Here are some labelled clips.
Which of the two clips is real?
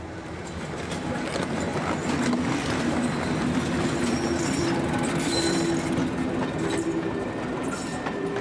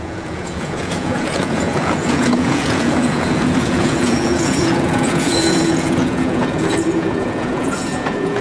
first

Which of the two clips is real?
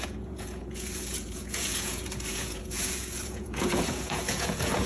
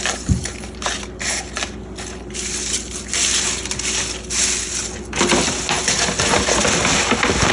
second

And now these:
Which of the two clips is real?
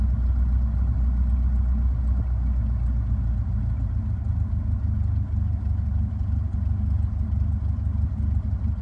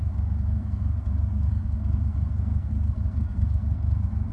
first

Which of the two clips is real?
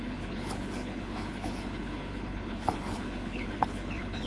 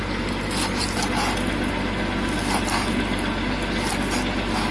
second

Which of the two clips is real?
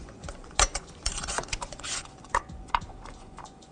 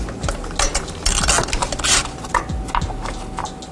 second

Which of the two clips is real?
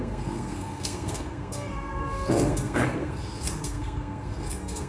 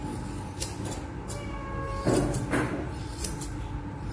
second